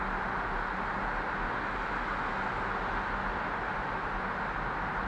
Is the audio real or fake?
real